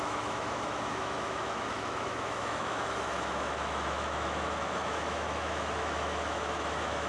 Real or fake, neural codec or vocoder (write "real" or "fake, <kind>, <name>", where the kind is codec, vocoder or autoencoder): fake, autoencoder, DAC-VAE